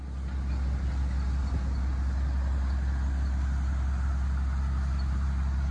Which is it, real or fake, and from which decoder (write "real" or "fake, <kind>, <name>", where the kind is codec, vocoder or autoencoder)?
real